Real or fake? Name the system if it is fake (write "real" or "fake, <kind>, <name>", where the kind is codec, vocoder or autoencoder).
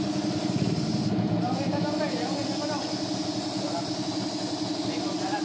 real